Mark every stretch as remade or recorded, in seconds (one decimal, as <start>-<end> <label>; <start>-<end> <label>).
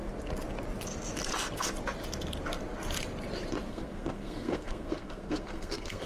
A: 0.0-3.7 recorded; 3.7-6.1 remade